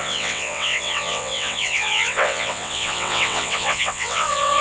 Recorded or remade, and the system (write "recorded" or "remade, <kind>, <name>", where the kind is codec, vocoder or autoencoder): remade, vocoder, WaveNeXt